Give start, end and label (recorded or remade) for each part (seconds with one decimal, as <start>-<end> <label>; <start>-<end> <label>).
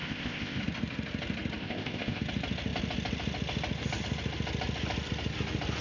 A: 0.0-0.6 remade; 0.6-1.6 recorded; 1.6-2.2 remade; 2.2-5.8 recorded